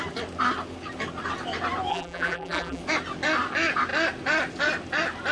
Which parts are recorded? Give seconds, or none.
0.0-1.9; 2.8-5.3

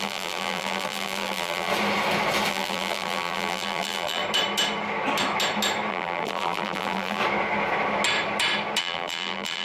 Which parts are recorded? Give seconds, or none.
1.7-2.5; 4.2-5.9; 7.2-8.8

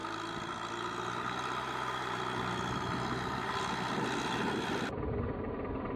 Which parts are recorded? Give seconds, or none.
0.0-6.0